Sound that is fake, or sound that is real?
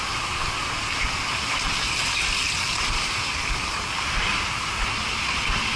real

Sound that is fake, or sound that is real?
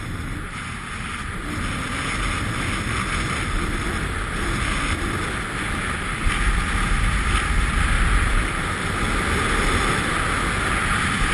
real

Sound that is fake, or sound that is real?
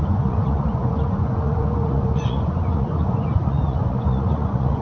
fake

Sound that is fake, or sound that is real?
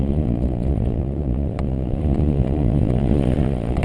fake